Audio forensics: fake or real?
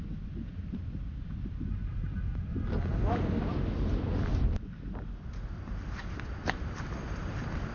real